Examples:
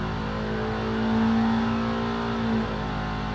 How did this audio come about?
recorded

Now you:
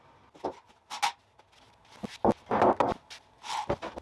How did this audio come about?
recorded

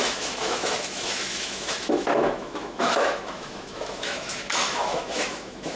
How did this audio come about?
remade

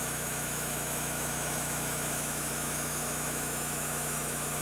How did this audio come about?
remade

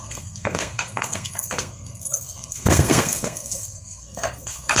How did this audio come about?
remade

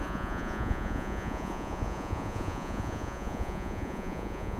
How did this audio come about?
remade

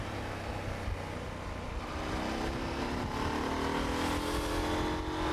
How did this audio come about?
recorded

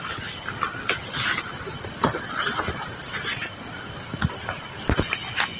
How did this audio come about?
recorded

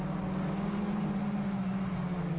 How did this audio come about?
recorded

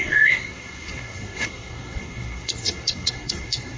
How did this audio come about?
remade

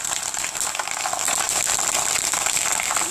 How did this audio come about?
remade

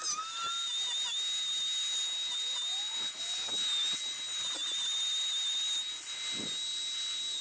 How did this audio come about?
recorded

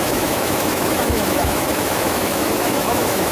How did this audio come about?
remade